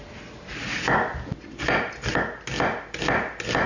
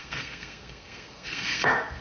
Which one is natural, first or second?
first